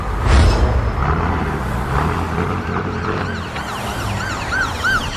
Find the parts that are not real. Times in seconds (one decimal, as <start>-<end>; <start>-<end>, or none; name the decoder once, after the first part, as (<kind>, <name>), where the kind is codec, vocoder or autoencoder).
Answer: 1.0-4.1 (vocoder, BigVGAN v2)